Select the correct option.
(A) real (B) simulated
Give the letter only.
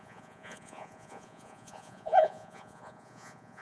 B